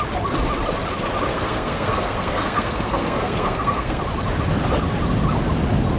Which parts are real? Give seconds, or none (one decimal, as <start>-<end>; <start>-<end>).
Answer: 0.0-1.3; 4.0-6.0